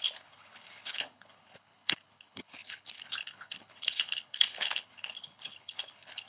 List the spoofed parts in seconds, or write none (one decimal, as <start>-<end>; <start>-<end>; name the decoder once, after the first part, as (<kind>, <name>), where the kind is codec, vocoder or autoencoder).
0.0-6.3 (codec, HILCodec)